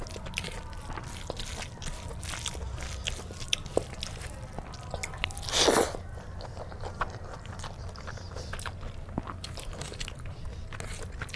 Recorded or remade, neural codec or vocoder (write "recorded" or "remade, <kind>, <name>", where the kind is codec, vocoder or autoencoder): recorded